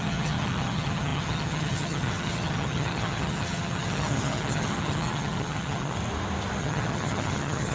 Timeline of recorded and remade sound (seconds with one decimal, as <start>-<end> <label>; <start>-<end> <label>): 0.0-6.0 remade; 6.0-6.6 recorded; 6.6-7.7 remade